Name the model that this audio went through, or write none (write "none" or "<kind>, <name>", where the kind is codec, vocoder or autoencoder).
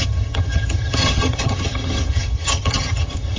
vocoder, HiFi-GAN